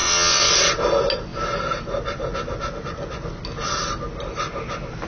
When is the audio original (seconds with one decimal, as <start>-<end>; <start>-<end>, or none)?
0.5-5.1